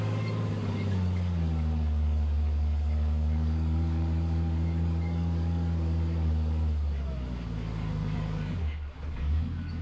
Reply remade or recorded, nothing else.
remade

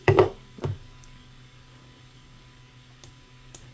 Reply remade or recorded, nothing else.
remade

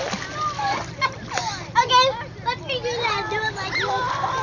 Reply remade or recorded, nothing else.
recorded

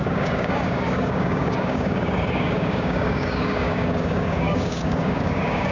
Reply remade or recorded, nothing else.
remade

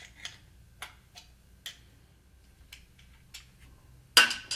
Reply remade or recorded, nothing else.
recorded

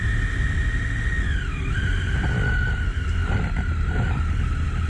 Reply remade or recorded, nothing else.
recorded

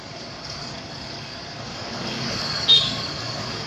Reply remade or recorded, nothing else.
remade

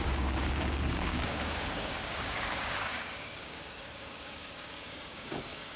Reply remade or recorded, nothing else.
remade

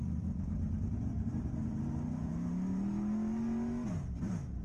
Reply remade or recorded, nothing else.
recorded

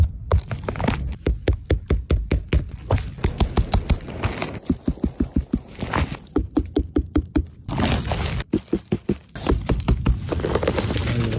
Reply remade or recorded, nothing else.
recorded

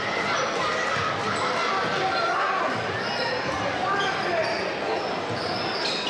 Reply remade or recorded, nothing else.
recorded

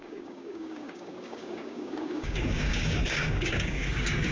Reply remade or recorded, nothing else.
remade